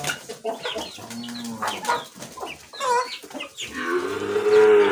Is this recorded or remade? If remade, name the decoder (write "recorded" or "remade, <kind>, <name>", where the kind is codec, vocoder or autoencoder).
recorded